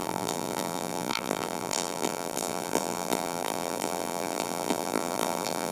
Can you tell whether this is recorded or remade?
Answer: remade